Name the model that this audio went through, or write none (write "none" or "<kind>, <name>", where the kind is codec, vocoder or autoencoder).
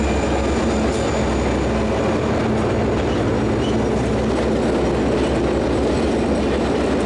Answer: none